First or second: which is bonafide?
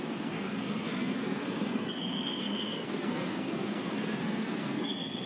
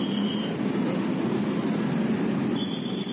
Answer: second